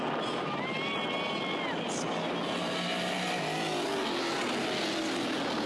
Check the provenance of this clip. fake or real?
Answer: real